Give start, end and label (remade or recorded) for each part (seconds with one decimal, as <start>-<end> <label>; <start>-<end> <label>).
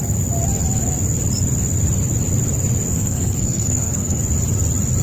0.0-2.9 recorded; 2.9-4.2 remade; 4.2-5.0 recorded